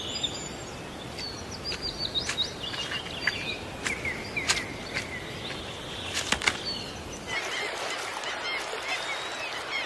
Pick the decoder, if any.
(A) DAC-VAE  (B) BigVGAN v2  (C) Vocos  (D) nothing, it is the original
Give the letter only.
D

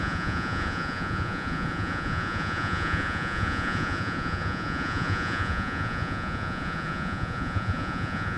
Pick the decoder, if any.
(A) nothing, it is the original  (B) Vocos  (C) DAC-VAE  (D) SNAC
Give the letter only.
B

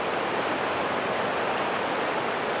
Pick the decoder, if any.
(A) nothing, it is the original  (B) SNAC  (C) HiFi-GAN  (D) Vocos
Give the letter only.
A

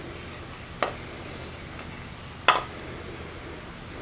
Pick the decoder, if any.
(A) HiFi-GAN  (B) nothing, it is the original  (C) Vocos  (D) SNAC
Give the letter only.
B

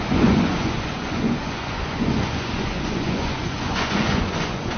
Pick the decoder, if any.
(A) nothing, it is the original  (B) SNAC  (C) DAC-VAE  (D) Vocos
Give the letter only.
D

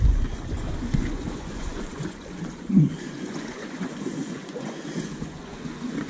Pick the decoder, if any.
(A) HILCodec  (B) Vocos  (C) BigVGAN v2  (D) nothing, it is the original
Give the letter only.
B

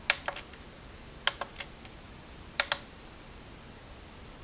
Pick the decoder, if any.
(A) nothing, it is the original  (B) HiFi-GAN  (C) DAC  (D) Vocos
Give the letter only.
A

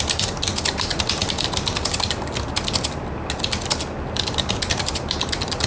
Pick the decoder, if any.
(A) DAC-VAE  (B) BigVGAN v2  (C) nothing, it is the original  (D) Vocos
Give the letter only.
C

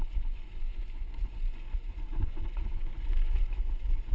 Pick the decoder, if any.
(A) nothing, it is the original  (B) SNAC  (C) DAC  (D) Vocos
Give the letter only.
D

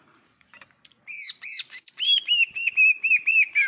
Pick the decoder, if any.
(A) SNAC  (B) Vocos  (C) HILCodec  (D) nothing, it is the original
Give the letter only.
D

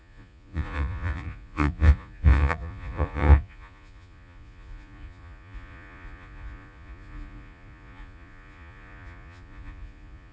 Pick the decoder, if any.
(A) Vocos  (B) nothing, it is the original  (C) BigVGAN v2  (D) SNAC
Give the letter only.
A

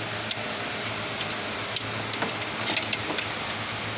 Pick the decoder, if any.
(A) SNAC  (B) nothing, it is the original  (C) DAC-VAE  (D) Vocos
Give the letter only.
B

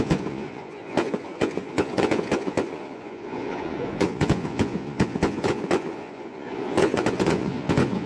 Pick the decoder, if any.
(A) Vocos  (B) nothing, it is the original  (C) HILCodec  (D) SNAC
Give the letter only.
A